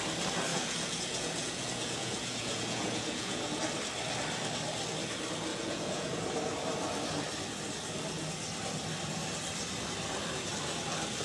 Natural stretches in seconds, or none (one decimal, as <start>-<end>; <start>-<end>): 0.0-0.5; 3.6-5.5; 6.2-11.2